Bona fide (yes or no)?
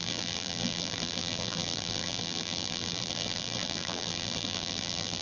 no